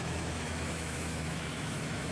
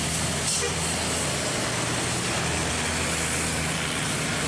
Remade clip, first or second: first